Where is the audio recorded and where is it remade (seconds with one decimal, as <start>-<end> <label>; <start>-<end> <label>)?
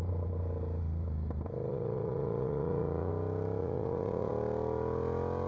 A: 0.0-1.7 recorded; 1.7-3.1 remade; 3.1-3.6 recorded; 3.6-4.3 remade; 4.3-5.5 recorded